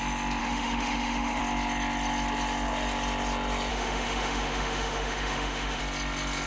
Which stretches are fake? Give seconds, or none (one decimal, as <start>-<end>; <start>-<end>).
0.4-1.4; 3.7-5.8